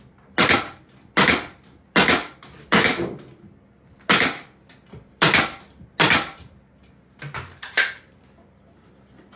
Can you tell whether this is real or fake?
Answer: real